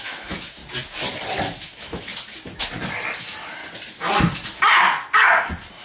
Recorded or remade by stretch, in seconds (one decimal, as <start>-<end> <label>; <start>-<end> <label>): 0.0-0.6 remade; 0.6-1.4 recorded; 1.4-2.1 remade; 2.1-3.2 recorded; 3.2-3.6 remade; 3.6-5.8 recorded

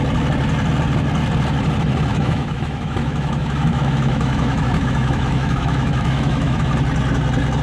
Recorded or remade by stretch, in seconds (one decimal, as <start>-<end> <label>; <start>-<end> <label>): 0.0-2.1 recorded; 2.1-6.7 remade; 6.7-7.6 recorded

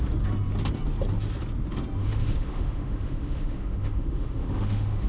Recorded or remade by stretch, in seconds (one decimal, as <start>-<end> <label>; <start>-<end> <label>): 0.0-2.0 recorded; 2.0-5.1 remade

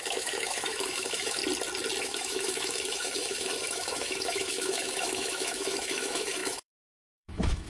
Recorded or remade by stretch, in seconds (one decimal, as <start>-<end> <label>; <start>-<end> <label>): 0.0-1.4 remade; 1.4-2.0 recorded; 2.0-7.7 remade

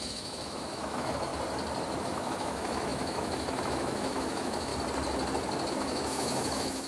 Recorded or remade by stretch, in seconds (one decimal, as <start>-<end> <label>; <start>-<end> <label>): 0.0-1.3 remade; 1.3-2.0 recorded; 2.0-4.7 remade; 4.7-5.7 recorded; 5.7-6.9 remade

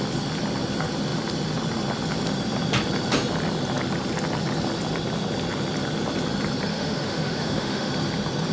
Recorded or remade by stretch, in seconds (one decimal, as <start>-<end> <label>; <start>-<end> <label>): 0.0-6.7 recorded; 6.7-7.9 remade; 7.9-8.5 recorded

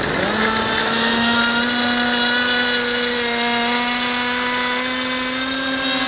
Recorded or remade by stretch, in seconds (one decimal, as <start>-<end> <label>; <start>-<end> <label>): 0.0-0.8 recorded; 0.8-1.4 remade; 1.4-6.1 recorded

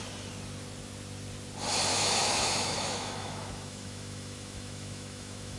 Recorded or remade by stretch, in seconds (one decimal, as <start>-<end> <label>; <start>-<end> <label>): 0.0-1.9 recorded; 1.9-5.6 remade